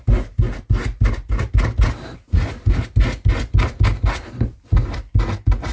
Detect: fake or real real